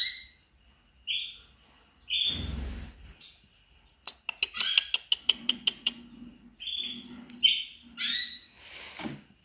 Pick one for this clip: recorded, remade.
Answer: recorded